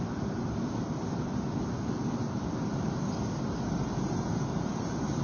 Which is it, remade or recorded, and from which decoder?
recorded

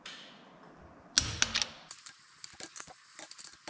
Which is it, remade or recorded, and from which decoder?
recorded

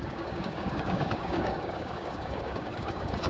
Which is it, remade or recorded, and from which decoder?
remade, codec, DAC